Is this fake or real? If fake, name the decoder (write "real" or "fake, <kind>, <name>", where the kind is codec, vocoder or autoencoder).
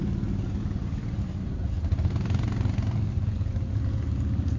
real